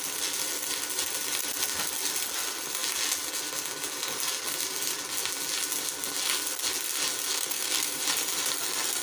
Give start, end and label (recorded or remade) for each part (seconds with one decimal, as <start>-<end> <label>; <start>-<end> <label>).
0.0-7.3 recorded; 7.3-8.0 remade; 8.0-9.0 recorded